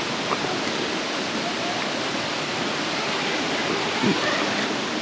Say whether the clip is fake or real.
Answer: real